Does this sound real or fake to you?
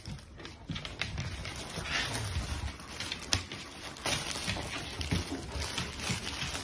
real